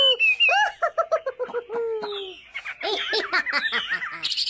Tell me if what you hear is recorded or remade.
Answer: recorded